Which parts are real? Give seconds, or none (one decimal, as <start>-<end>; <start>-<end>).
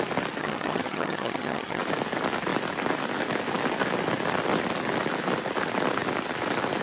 0.0-0.4; 1.8-6.8